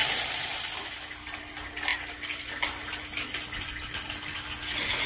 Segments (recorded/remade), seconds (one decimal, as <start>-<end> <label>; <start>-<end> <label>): 0.0-1.9 recorded; 1.9-2.5 remade; 2.5-5.1 recorded